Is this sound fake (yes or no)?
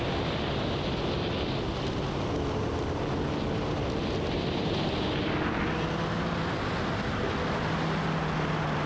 no